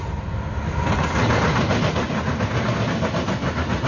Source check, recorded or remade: recorded